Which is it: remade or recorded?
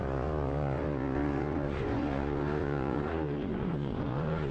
remade